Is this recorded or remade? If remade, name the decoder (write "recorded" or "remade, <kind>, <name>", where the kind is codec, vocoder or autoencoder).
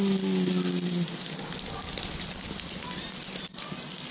recorded